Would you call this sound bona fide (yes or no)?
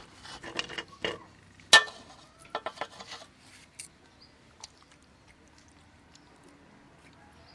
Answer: yes